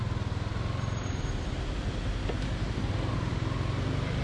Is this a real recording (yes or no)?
yes